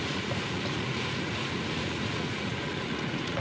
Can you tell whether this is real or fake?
fake